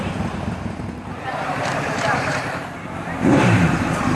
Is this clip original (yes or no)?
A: no